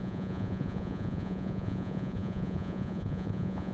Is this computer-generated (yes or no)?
yes